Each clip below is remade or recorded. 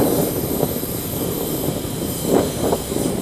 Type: remade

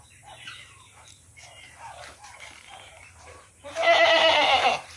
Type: remade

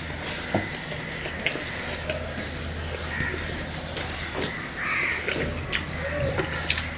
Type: recorded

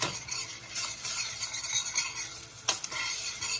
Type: remade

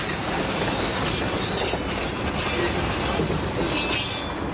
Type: recorded